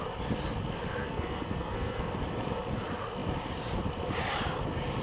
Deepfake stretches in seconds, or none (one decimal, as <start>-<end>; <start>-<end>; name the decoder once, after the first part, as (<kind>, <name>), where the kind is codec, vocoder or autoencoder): 1.0-2.2 (codec, SNAC)